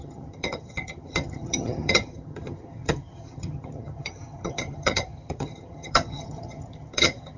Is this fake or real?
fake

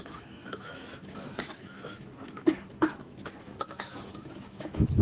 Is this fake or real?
fake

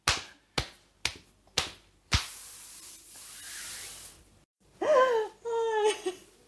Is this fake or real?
real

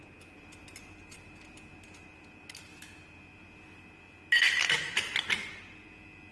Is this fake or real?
real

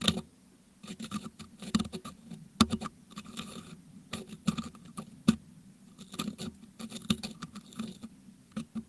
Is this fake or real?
real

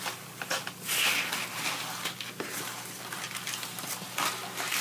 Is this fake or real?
real